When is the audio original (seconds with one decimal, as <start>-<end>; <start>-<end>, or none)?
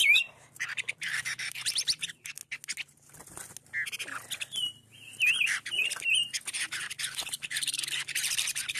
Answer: 2.4-6.8